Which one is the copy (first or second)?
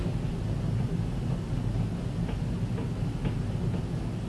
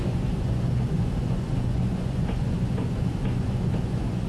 second